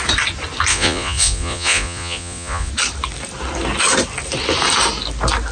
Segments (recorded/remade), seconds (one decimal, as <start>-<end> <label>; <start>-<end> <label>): 0.0-0.7 recorded; 0.7-2.7 remade; 2.7-5.5 recorded